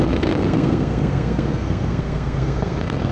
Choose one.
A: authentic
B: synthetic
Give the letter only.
B